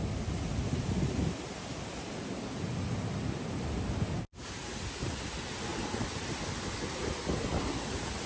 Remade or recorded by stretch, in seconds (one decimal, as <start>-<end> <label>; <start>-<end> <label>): 0.0-8.3 recorded